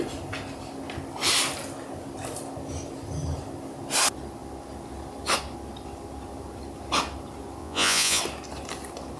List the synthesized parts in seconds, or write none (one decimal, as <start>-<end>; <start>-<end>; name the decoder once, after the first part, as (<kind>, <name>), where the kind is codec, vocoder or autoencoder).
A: 7.6-8.2 (vocoder, Vocos)

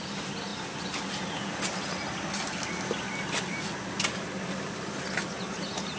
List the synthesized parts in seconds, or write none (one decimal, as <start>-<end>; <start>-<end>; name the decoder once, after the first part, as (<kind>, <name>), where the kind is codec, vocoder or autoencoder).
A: none

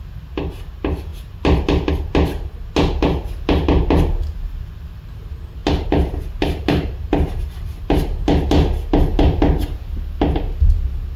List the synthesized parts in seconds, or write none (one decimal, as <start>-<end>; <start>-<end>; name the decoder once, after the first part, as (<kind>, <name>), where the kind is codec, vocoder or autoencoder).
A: none

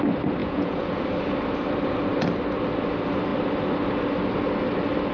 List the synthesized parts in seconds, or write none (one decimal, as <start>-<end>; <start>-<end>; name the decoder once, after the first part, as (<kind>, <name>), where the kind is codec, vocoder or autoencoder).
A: 0.4-1.0 (vocoder, Vocos)

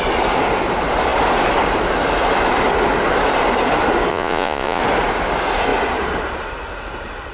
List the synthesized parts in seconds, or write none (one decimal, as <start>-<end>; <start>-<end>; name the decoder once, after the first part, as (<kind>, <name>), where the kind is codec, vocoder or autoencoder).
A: 4.1-4.8 (vocoder, Vocos)